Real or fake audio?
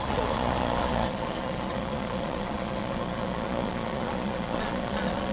fake